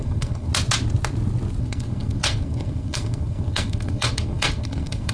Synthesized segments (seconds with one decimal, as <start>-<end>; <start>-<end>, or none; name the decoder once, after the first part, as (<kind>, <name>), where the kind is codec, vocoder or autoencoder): 0.0-0.5 (codec, SNAC); 1.6-5.1